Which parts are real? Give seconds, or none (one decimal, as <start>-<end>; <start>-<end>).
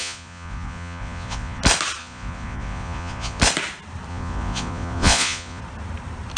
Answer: 1.6-2.0; 3.4-4.1; 5.6-6.4